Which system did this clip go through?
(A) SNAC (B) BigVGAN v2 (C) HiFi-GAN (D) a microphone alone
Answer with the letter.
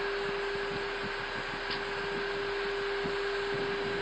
D